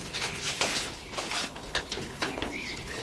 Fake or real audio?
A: fake